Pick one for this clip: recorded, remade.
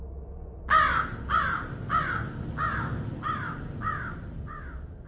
recorded